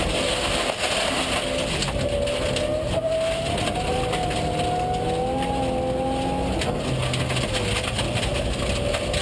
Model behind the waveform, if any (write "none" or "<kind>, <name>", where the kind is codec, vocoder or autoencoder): none